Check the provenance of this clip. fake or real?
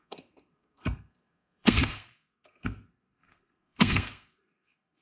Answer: fake